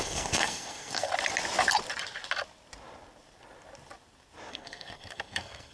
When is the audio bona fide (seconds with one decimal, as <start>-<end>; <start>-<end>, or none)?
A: 1.1-4.5